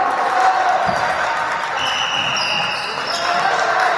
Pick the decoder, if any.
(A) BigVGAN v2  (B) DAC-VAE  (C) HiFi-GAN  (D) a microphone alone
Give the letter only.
D